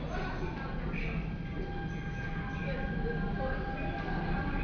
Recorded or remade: recorded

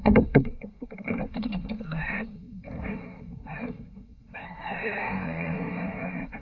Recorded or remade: remade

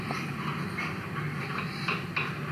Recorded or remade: recorded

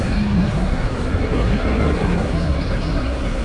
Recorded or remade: remade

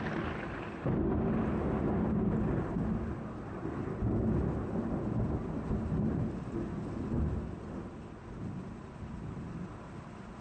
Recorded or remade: recorded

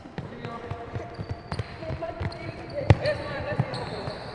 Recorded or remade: remade